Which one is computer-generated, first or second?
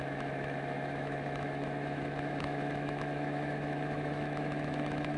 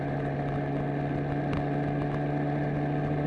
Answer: first